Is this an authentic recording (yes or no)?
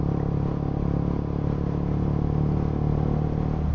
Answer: yes